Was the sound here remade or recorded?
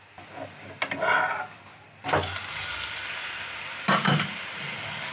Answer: recorded